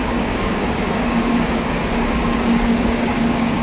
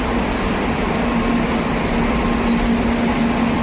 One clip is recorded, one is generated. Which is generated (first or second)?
first